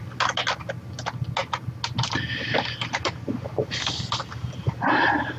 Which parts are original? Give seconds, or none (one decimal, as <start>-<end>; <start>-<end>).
0.0-5.4